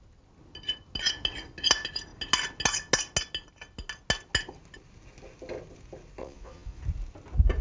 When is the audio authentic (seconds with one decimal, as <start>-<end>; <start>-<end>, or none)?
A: 0.0-6.2; 6.8-7.6